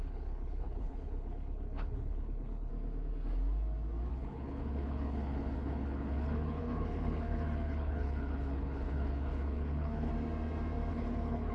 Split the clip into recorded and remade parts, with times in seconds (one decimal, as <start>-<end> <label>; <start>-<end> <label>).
0.0-2.7 remade; 2.7-4.1 recorded; 4.1-10.1 remade; 10.1-10.9 recorded; 10.9-11.5 remade